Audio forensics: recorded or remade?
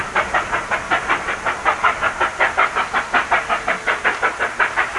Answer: recorded